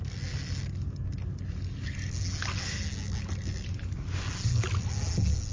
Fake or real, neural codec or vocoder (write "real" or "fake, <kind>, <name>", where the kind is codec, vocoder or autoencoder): real